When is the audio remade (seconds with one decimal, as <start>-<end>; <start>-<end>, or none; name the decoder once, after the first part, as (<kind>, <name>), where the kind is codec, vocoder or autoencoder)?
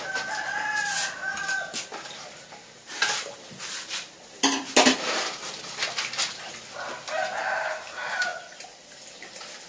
2.8-5.6 (vocoder, BigVGAN v2); 8.3-8.9